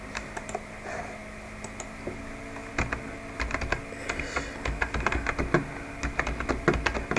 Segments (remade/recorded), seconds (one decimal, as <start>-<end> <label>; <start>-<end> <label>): 0.0-7.2 recorded